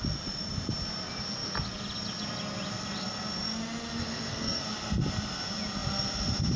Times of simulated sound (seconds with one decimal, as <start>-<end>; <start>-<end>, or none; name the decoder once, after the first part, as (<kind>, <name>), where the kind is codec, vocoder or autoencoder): 4.0-4.6 (codec, SNAC)

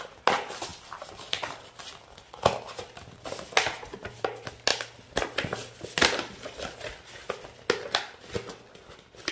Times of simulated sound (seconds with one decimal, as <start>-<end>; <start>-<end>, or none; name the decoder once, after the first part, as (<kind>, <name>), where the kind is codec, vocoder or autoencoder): none

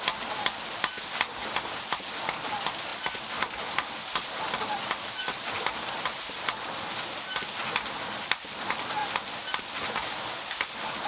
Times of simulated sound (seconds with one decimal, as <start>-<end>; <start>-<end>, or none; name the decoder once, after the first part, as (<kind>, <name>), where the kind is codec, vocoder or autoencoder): none

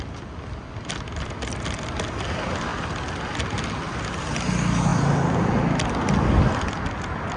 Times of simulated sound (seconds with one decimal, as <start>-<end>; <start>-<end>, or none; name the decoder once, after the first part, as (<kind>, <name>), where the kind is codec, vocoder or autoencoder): none

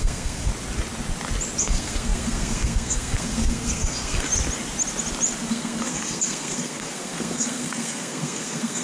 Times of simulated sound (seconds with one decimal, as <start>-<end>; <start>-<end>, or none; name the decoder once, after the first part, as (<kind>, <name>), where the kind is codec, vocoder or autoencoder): 0.0-0.5 (codec, SNAC); 1.6-4.3; 5.5-8.8